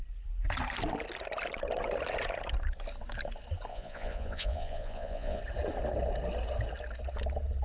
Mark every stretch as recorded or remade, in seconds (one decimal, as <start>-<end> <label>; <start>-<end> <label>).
0.0-3.7 recorded; 3.7-5.4 remade; 5.4-7.6 recorded